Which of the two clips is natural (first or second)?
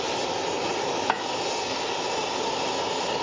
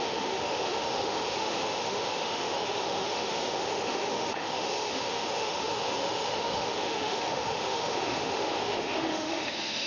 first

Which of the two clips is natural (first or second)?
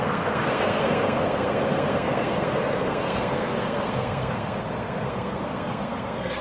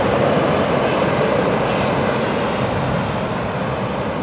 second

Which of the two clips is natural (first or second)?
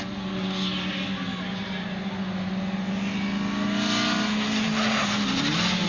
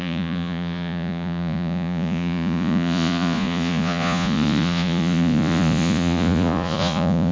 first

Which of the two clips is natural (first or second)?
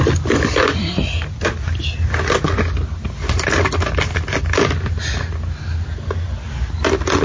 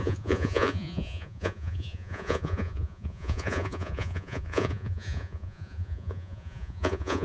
first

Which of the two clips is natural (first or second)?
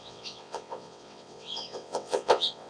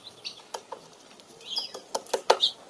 second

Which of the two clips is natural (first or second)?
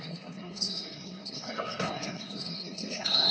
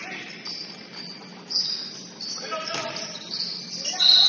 second